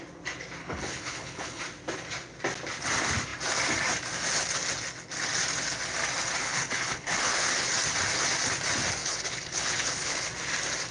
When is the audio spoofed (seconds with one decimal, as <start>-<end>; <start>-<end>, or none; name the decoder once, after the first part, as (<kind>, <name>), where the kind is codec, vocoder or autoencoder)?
0.6-1.6 (codec, HILCodec); 6.4-7.7; 9.0-10.3